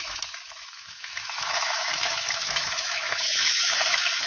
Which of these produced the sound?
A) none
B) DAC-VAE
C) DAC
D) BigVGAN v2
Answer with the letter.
B